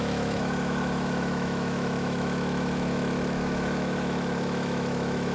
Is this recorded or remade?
remade